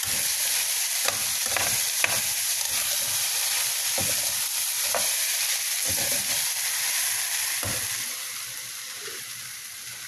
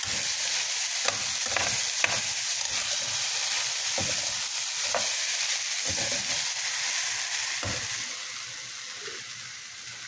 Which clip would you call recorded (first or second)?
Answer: second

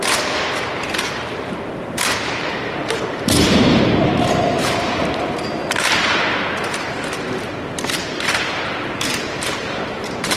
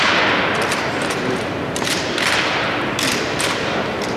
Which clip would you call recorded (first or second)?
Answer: second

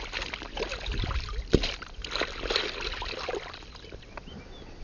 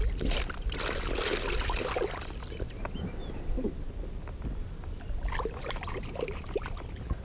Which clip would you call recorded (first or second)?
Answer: second